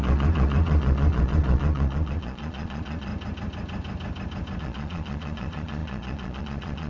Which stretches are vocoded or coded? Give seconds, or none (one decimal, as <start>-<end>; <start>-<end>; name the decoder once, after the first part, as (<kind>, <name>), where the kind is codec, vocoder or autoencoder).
0.0-3.1 (vocoder, Vocos); 4.6-6.9